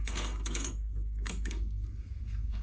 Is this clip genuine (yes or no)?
no